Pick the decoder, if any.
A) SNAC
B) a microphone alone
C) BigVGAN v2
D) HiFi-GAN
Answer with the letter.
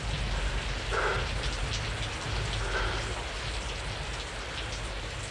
B